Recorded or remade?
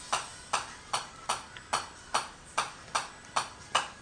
recorded